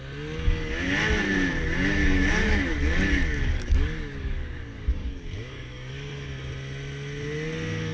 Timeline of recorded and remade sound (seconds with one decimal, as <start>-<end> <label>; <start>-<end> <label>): 0.0-2.0 recorded; 2.0-5.9 remade; 5.9-7.9 recorded